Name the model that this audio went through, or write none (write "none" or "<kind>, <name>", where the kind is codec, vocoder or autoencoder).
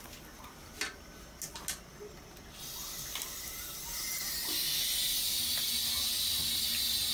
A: none